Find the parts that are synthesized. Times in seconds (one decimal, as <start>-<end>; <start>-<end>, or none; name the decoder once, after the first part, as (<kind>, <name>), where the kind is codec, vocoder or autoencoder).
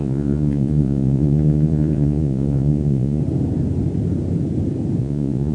0.0-3.2 (vocoder, Vocos); 5.0-5.5